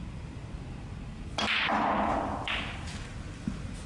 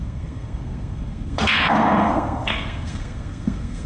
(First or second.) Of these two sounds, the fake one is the second